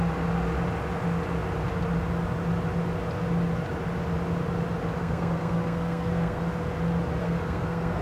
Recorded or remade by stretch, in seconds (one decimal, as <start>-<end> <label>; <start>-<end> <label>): 0.0-5.0 recorded; 5.0-6.4 remade; 6.4-7.2 recorded; 7.2-8.0 remade